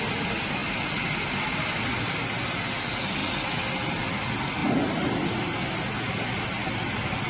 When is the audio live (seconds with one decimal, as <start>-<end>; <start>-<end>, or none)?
0.0-7.3